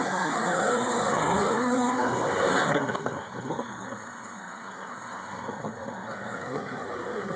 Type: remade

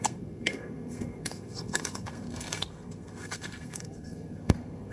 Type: remade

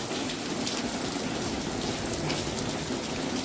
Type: recorded